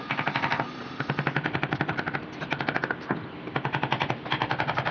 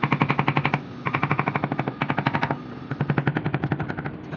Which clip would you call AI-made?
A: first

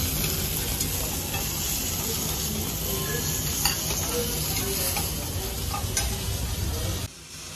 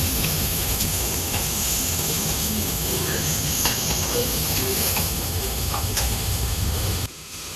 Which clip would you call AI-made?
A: second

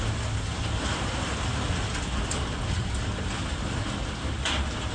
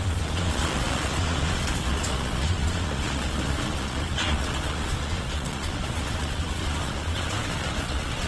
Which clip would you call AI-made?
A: second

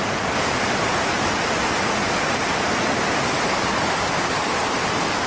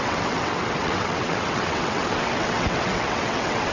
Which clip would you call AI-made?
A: second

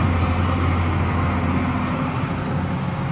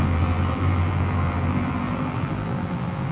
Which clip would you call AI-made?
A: second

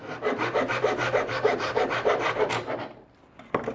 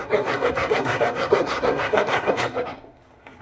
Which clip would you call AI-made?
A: second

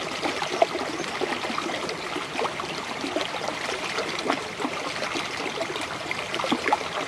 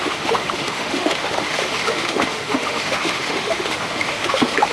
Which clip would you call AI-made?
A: second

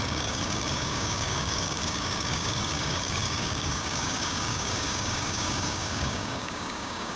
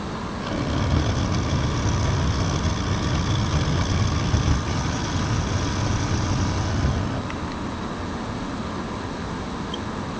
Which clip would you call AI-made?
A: first